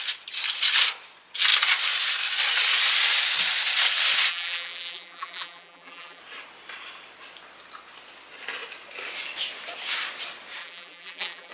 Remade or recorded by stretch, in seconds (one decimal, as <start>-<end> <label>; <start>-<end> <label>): 0.0-4.3 recorded; 4.3-6.2 remade; 6.2-10.6 recorded; 10.6-11.5 remade